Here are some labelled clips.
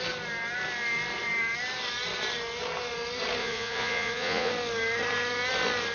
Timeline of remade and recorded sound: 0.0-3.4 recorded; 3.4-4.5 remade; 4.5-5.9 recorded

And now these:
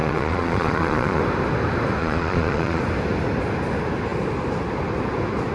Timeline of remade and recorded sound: 0.0-1.2 remade; 1.2-2.0 recorded; 2.0-2.8 remade; 2.8-5.5 recorded

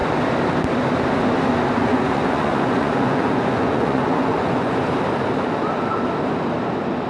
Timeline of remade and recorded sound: 0.0-1.8 recorded; 1.8-4.8 remade; 4.8-7.1 recorded

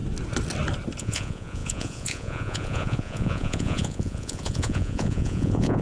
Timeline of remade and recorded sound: 0.0-1.0 recorded; 1.0-5.8 remade

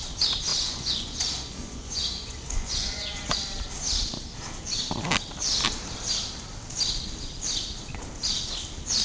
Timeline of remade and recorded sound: 0.0-0.5 recorded; 0.5-3.4 remade; 3.4-9.0 recorded

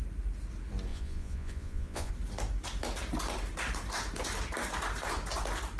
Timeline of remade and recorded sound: 0.0-0.9 recorded; 0.9-2.1 remade; 2.1-5.8 recorded